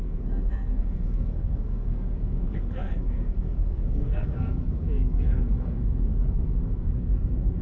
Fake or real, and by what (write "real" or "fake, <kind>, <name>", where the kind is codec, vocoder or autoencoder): fake, codec, SNAC